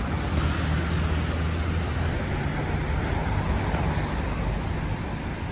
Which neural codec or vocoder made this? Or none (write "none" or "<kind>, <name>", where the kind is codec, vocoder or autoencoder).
none